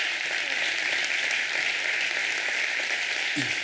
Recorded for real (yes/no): yes